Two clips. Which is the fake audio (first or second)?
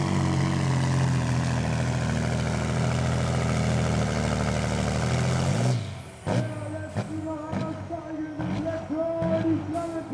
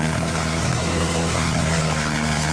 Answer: second